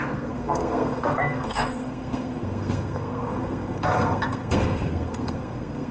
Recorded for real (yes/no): no